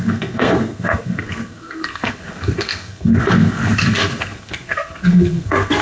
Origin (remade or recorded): remade